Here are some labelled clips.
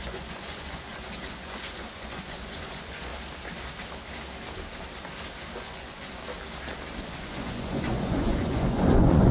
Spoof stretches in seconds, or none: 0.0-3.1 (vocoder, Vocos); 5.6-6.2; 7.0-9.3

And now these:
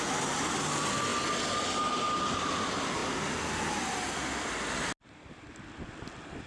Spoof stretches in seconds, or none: none

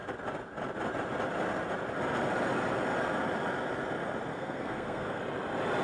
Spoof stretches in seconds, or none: 4.3-5.2 (codec, SNAC)

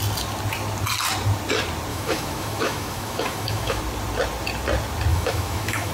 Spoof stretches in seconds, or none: 1.9-3.8 (autoencoder, DAC-VAE); 5.1-5.9

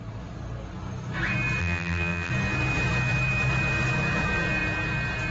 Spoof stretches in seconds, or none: 1.6-2.3 (vocoder, BigVGAN v2)

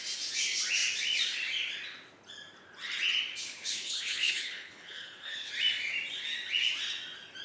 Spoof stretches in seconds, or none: 3.4-5.5 (codec, HILCodec)